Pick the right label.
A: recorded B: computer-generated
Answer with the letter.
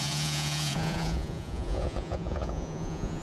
B